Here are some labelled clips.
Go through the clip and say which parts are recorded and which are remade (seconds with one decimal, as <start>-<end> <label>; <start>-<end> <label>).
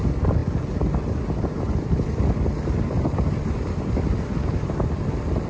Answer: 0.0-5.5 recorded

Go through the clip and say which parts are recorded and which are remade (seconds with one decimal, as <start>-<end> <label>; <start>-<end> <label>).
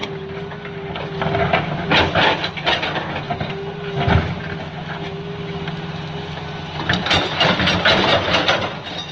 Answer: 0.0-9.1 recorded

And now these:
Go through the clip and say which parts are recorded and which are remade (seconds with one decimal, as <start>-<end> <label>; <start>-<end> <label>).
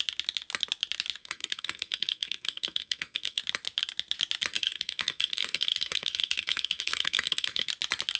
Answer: 0.0-1.2 recorded; 1.2-3.4 remade; 3.4-4.5 recorded; 4.5-7.7 remade; 7.7-8.2 recorded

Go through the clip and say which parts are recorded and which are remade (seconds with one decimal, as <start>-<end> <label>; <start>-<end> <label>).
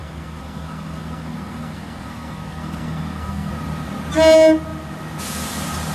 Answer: 0.0-3.5 remade; 3.5-5.9 recorded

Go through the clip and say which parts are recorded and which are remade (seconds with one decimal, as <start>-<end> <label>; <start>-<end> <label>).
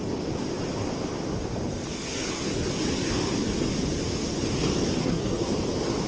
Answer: 0.0-5.0 recorded; 5.0-5.5 remade; 5.5-6.1 recorded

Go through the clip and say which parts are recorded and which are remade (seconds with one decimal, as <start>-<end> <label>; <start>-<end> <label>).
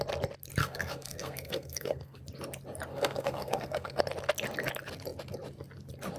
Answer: 0.0-0.6 recorded; 0.6-2.2 remade; 2.2-2.9 recorded; 2.9-4.0 remade; 4.0-6.2 recorded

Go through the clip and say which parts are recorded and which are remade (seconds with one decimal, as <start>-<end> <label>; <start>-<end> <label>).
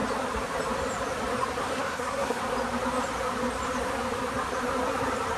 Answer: 0.0-1.6 recorded; 1.6-2.4 remade; 2.4-5.4 recorded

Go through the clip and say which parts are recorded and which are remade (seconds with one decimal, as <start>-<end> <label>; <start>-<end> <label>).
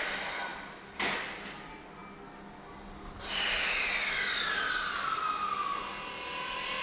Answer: 0.0-6.8 recorded